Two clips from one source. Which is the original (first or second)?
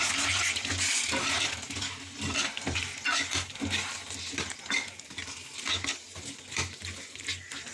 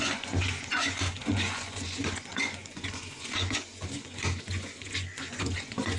first